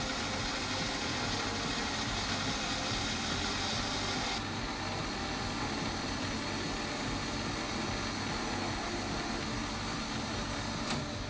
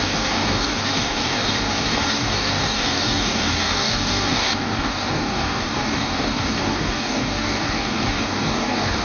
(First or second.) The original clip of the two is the first